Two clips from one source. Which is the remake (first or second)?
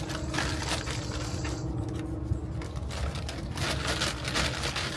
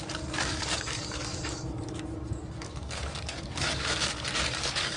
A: second